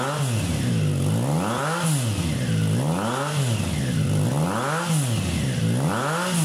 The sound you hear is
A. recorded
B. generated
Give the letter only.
A